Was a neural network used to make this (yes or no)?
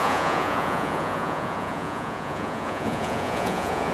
yes